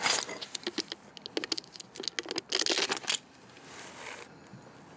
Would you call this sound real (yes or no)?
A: yes